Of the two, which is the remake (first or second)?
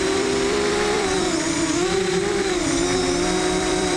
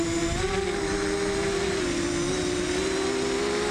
first